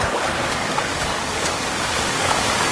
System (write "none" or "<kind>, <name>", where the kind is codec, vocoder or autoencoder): codec, DAC